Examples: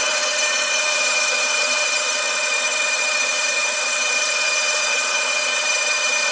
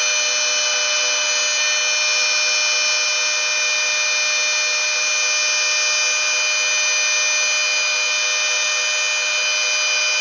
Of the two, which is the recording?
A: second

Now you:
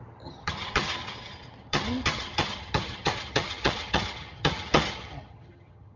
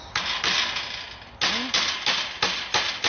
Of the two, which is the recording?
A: second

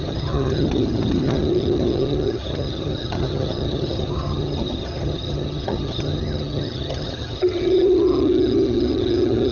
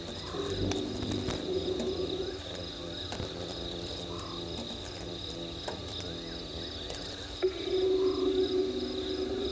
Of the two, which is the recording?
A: second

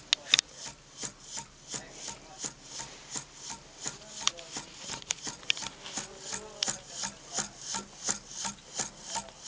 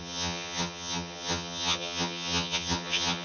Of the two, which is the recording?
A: first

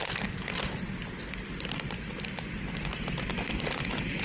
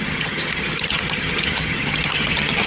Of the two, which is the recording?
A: first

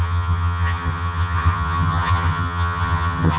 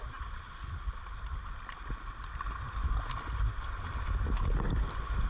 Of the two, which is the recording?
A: second